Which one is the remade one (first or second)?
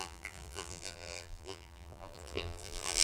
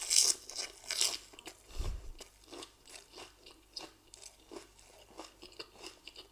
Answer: first